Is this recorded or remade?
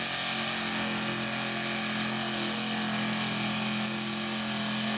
recorded